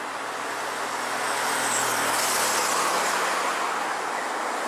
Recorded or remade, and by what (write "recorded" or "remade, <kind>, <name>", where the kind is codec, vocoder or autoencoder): recorded